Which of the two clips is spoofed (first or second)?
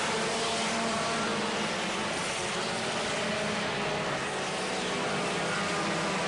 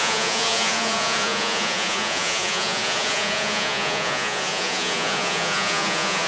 second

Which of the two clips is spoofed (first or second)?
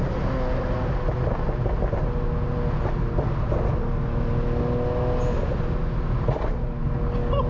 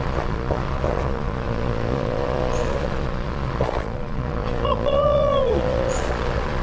second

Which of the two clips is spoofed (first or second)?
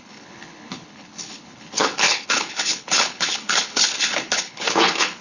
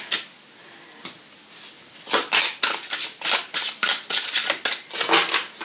first